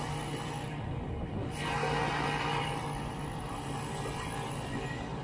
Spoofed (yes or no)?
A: no